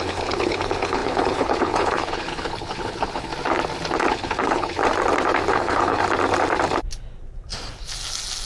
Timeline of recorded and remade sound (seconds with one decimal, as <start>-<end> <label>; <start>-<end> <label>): 0.0-3.3 remade; 3.3-4.1 recorded; 4.1-4.8 remade; 4.8-5.5 recorded; 5.5-6.0 remade; 6.0-8.5 recorded